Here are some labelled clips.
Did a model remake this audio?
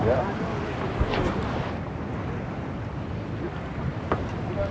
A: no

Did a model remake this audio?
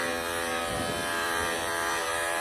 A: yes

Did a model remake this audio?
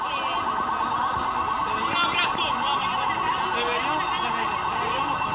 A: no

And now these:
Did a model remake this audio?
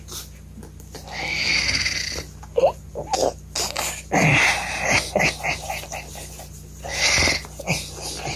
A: no